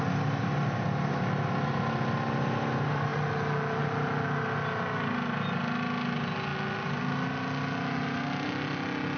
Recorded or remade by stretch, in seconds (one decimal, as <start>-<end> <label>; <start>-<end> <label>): 0.0-9.2 recorded